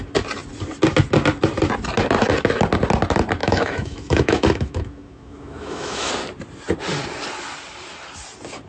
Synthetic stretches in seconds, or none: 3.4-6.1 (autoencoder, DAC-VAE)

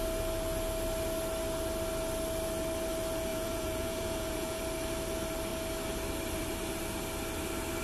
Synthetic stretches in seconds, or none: 3.3-4.6 (vocoder, Vocos)

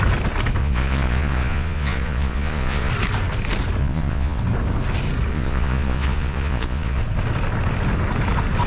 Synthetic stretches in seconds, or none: 0.6-2.9 (vocoder, Vocos); 3.8-4.4; 5.3-7.0